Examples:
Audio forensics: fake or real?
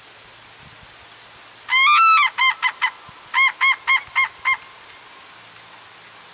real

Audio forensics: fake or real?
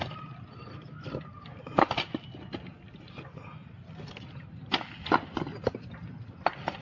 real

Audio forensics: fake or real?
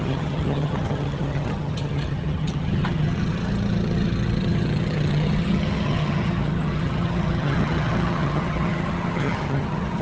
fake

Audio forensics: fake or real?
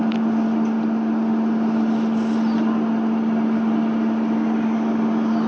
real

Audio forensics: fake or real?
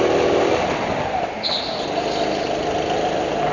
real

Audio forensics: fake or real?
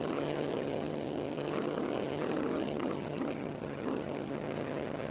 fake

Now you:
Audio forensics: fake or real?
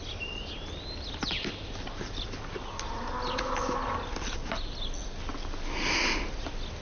real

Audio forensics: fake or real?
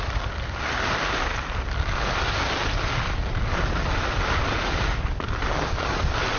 real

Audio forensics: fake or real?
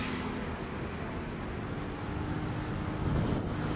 real